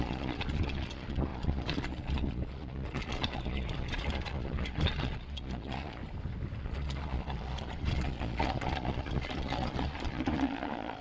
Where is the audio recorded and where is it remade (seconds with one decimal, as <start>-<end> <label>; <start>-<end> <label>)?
0.0-6.0 remade; 6.0-6.6 recorded; 6.6-11.0 remade